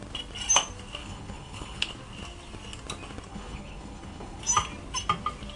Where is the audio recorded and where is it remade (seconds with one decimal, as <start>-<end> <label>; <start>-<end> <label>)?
0.0-1.0 recorded; 1.0-1.9 remade; 1.9-3.3 recorded; 3.3-4.4 remade; 4.4-5.6 recorded